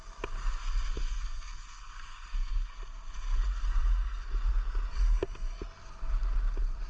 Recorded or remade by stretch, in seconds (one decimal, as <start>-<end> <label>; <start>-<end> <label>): 0.0-0.9 recorded; 0.9-2.7 remade; 2.7-6.9 recorded